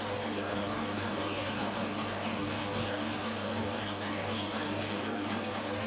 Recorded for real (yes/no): no